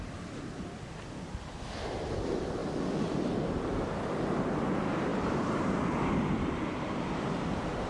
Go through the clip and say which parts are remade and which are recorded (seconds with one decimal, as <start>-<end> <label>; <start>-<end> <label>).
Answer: 0.0-7.9 recorded